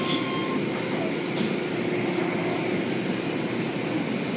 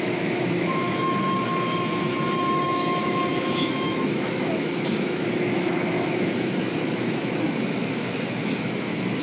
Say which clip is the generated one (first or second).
second